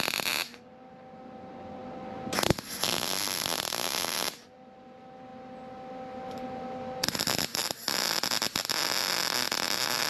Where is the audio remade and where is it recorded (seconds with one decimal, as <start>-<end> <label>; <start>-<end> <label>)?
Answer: 0.0-10.1 recorded